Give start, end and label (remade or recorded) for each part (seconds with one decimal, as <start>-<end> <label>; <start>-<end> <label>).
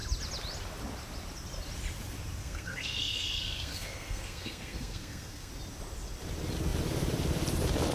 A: 0.0-2.4 recorded; 2.4-5.5 remade; 5.5-7.9 recorded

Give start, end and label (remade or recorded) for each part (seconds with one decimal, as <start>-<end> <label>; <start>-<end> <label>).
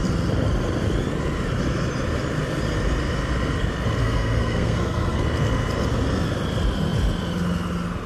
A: 0.0-4.0 recorded; 4.0-5.2 remade; 5.2-8.1 recorded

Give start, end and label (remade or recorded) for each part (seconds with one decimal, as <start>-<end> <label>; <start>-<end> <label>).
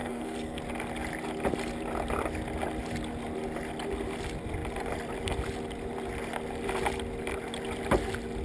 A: 0.0-0.6 remade; 0.6-8.4 recorded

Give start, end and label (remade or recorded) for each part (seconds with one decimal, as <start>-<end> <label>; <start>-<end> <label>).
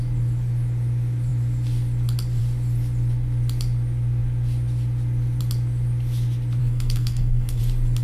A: 0.0-6.6 recorded; 6.6-7.6 remade; 7.6-8.0 recorded